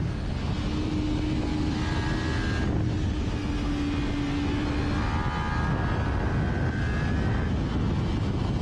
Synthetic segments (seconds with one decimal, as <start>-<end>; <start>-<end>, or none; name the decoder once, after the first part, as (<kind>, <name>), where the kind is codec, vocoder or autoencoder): none

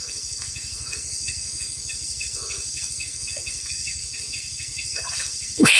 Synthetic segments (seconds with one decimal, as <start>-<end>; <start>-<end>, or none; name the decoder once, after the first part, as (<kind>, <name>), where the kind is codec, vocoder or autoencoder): 0.0-5.8 (codec, SNAC)

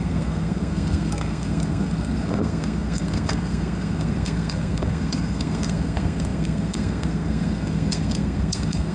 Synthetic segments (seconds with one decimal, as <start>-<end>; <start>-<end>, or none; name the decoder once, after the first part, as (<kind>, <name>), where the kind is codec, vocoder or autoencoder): 0.0-8.9 (codec, SNAC)

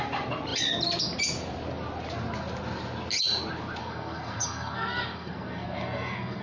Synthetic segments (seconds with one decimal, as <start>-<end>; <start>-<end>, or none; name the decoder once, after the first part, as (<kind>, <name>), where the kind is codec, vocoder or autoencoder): 3.8-6.4 (codec, SNAC)